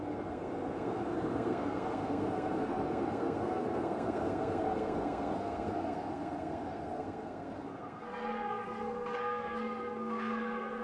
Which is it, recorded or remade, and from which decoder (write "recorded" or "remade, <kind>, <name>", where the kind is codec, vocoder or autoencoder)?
remade, codec, SNAC